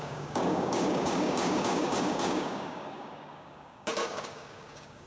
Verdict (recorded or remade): remade